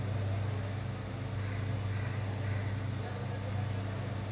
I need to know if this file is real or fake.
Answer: real